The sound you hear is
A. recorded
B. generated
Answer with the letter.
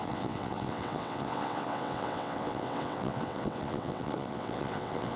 B